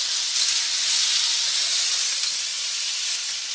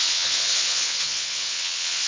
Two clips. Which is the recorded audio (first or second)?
first